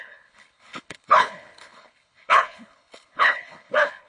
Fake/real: fake